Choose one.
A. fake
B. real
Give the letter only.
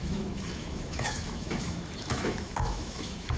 A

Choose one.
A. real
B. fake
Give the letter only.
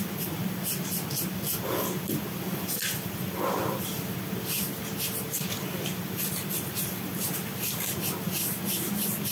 A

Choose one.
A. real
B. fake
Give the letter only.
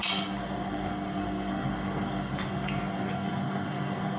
B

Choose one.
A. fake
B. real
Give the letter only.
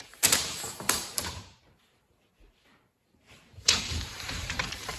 A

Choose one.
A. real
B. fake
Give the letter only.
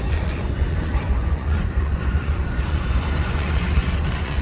B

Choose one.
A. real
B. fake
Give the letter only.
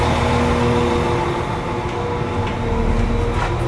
A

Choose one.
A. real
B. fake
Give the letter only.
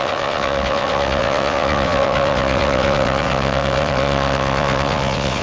B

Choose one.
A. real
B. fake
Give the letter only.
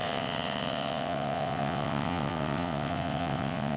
B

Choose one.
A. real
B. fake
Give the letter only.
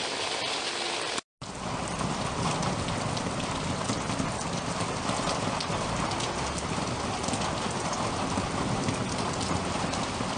A